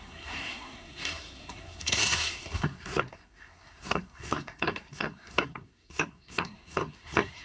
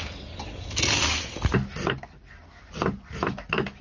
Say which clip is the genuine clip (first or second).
second